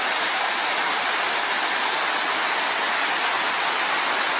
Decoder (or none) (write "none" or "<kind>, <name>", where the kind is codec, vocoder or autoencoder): none